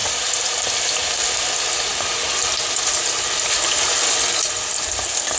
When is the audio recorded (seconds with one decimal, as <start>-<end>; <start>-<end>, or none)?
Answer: 0.0-5.4

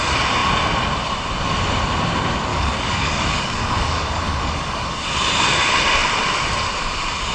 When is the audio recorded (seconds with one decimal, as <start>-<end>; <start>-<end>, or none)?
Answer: 0.0-2.5; 5.1-7.3